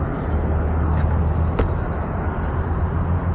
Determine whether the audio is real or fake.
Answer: real